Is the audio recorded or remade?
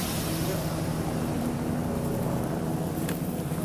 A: remade